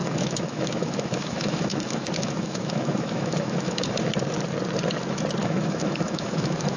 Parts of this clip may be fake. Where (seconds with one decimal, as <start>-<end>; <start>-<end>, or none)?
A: 0.0-4.1; 5.4-6.8